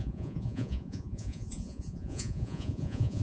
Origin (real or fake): fake